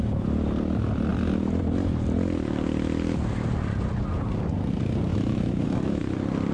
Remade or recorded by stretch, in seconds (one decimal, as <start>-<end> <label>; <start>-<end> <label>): 0.0-5.1 recorded; 5.1-6.0 remade; 6.0-6.5 recorded